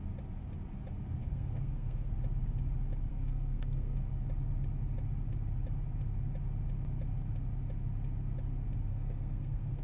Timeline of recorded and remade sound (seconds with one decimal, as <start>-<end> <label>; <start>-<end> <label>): 0.0-1.2 recorded; 1.2-2.1 remade; 2.1-3.1 recorded; 3.1-4.1 remade; 4.1-8.9 recorded; 8.9-9.8 remade